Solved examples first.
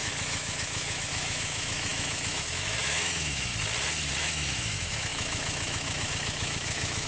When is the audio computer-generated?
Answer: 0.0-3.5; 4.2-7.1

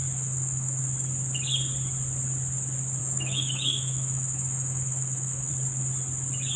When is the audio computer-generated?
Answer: 0.0-0.8; 3.0-5.5

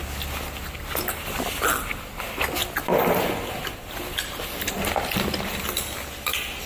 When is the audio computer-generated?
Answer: none

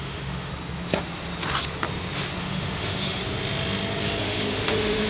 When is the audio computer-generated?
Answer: 0.0-0.5; 2.4-3.2; 4.2-5.1

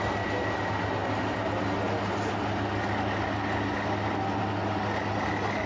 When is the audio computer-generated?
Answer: none

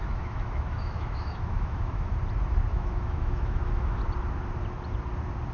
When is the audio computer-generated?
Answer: 0.0-2.1; 2.7-4.0

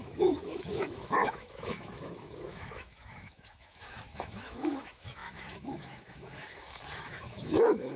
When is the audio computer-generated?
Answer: 0.0-8.0

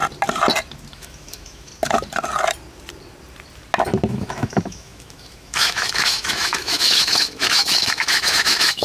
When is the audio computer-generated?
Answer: 0.9-1.7; 4.1-8.8